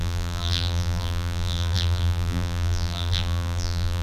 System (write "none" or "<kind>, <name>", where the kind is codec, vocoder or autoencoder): vocoder, BigVGAN v2